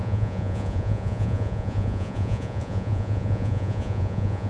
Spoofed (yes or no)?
yes